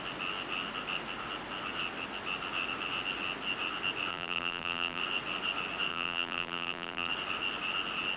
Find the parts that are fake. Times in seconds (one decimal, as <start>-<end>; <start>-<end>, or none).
4.1-5.0; 5.9-7.1